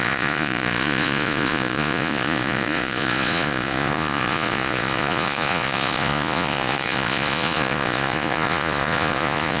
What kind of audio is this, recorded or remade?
remade